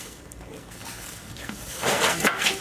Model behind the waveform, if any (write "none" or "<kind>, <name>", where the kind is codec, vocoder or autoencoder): codec, SNAC